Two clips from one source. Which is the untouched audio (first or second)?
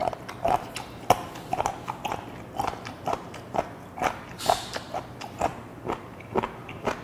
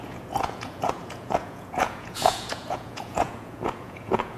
first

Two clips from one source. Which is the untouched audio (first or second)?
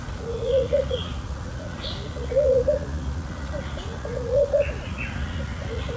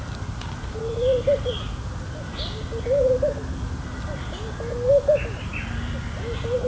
second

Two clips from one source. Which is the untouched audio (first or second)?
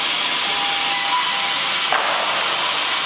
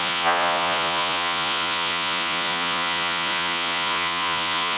first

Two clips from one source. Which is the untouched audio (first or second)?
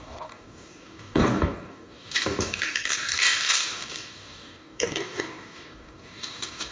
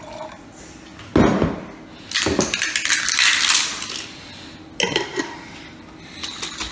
second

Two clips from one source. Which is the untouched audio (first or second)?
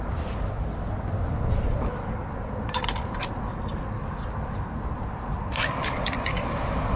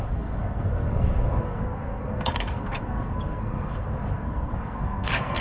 first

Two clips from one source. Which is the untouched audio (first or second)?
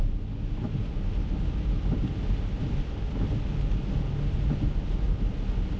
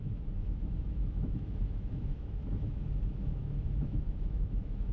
first